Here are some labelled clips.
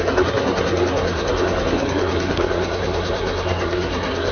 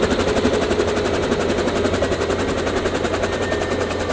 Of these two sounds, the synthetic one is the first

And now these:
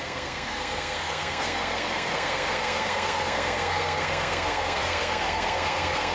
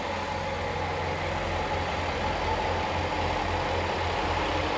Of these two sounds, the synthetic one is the first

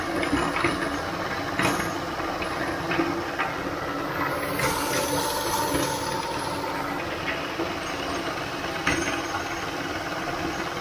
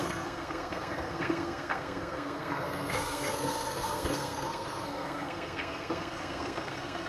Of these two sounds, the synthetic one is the second